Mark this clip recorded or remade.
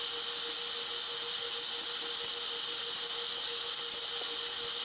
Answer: recorded